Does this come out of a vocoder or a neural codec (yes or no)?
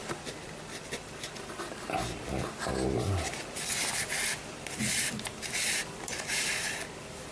no